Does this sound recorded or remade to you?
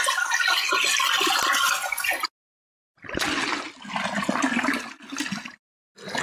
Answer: recorded